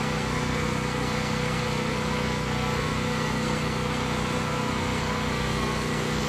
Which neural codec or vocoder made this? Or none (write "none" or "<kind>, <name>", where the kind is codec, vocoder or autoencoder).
codec, SNAC